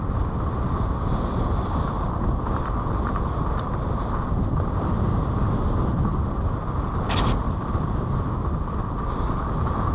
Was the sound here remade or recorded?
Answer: recorded